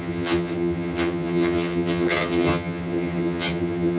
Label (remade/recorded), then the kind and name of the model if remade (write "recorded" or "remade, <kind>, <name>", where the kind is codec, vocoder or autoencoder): remade, vocoder, HiFi-GAN